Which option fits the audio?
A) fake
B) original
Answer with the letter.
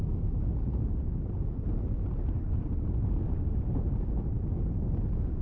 B